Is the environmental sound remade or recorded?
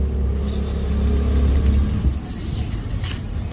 recorded